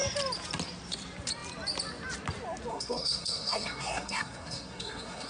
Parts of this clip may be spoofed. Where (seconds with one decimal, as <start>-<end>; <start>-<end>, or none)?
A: 2.7-5.3